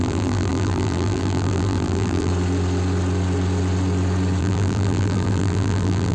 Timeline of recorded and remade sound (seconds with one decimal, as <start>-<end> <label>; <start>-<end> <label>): 0.0-2.3 remade; 2.3-4.4 recorded; 4.4-6.1 remade